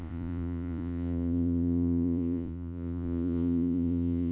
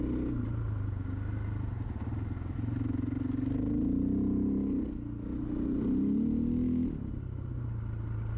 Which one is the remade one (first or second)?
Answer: first